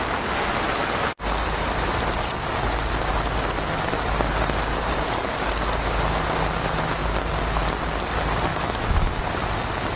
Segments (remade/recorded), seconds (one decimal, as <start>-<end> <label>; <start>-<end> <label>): 0.0-8.5 recorded; 8.5-9.2 remade; 9.2-10.0 recorded

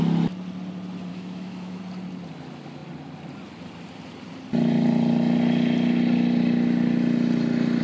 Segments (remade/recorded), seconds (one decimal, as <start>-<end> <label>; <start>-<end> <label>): 0.0-1.1 recorded; 1.1-1.8 remade; 1.8-7.8 recorded

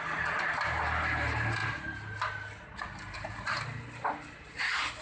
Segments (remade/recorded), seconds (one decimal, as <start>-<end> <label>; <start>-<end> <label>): 0.0-5.0 recorded

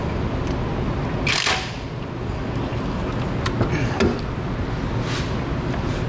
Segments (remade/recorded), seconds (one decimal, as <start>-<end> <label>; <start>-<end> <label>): 0.0-6.1 recorded

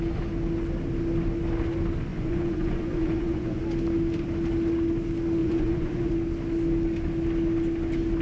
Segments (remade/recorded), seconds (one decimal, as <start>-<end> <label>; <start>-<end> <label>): 0.0-2.1 recorded; 2.1-3.6 remade; 3.6-5.4 recorded; 5.4-6.1 remade; 6.1-8.2 recorded

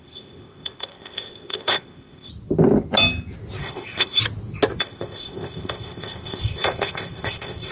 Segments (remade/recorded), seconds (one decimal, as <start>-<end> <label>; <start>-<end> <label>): 0.0-2.3 remade; 2.3-3.6 recorded; 3.6-4.2 remade; 4.2-4.8 recorded; 4.8-7.7 remade

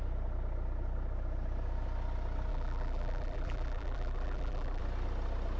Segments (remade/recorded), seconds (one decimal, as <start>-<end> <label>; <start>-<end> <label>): 0.0-2.5 recorded; 2.5-4.8 remade; 4.8-5.6 recorded

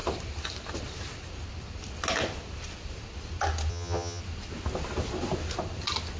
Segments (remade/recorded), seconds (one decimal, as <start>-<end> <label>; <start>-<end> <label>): 0.0-3.7 recorded; 3.7-4.2 remade; 4.2-6.2 recorded